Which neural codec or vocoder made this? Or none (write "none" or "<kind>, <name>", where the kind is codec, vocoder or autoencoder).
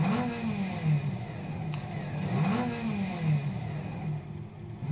none